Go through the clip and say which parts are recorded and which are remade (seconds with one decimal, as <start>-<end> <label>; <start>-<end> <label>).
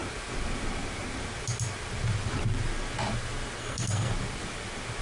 0.0-3.6 recorded; 3.6-4.1 remade; 4.1-5.0 recorded